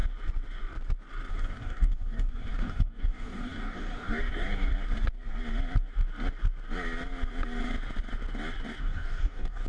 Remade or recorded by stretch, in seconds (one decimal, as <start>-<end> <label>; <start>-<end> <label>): 0.0-1.3 recorded; 1.3-4.7 remade; 4.7-8.8 recorded; 8.8-9.7 remade